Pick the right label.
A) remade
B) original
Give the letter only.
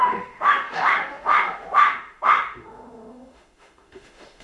A